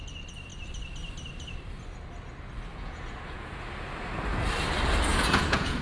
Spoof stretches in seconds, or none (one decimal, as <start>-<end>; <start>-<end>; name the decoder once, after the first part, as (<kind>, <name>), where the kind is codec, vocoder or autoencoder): 2.7-3.7 (vocoder, Vocos); 5.1-5.8